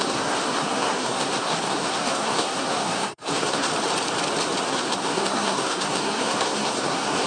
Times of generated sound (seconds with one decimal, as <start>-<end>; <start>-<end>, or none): 0.0-3.7; 4.7-7.3